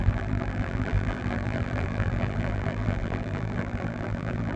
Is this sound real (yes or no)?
no